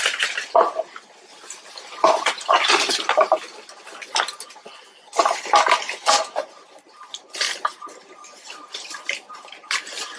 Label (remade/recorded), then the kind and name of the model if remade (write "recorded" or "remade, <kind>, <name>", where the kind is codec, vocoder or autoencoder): recorded